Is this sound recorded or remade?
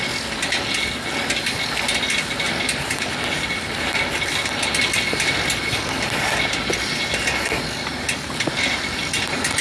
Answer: recorded